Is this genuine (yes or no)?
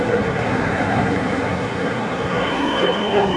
no